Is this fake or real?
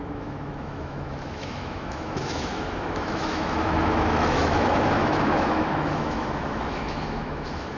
fake